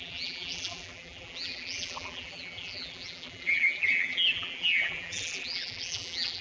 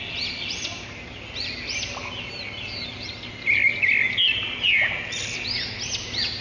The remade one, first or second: first